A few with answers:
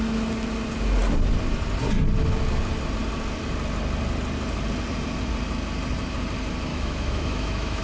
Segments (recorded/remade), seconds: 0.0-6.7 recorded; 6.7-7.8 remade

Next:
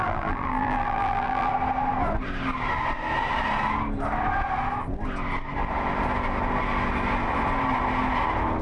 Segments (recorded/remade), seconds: 0.0-1.5 remade; 1.5-8.6 recorded

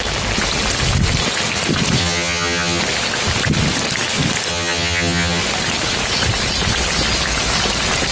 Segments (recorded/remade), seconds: 0.0-2.0 recorded; 2.0-2.8 remade; 2.8-4.5 recorded; 4.5-5.4 remade; 5.4-8.1 recorded